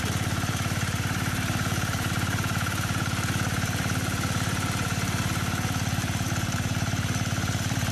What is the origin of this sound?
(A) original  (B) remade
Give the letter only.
B